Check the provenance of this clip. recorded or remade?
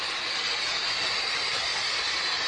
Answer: remade